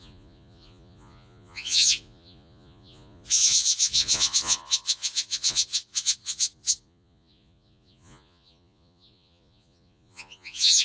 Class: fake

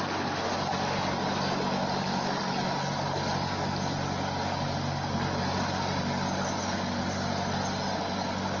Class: real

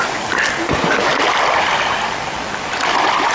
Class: real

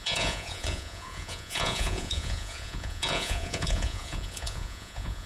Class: fake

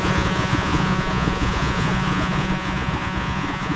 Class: fake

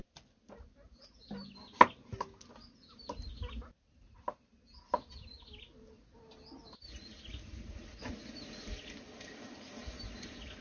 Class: real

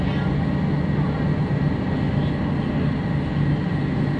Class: real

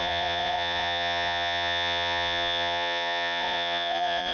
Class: fake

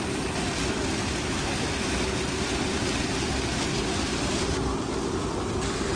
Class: real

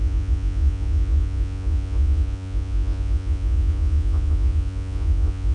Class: fake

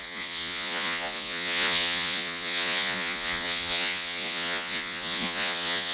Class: fake